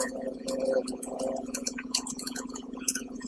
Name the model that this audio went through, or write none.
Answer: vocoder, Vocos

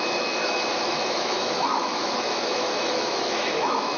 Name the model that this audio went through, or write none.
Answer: autoencoder, DAC-VAE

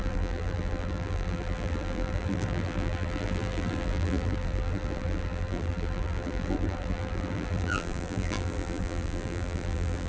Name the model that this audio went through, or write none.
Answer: vocoder, BigVGAN v2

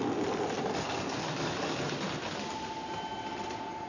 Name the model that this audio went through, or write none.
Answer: none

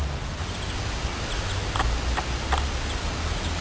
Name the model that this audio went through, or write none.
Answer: none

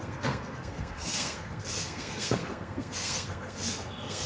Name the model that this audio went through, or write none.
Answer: codec, SNAC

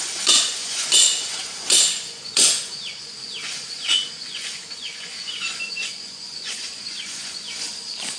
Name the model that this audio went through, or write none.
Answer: vocoder, Vocos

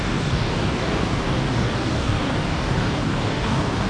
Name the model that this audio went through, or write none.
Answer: codec, DAC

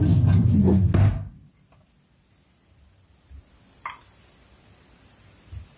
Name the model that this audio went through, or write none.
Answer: none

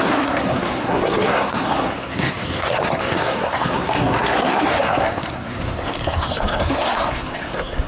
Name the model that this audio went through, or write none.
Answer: codec, SNAC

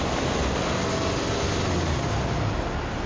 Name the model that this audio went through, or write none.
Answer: none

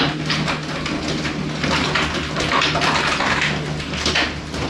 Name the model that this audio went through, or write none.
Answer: none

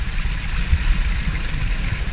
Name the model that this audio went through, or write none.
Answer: none